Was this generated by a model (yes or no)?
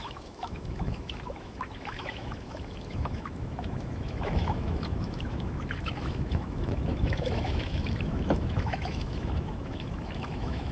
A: yes